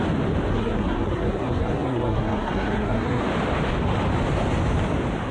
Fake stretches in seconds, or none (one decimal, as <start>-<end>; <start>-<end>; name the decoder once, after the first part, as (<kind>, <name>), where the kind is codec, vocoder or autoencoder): 0.5-3.2 (codec, SNAC)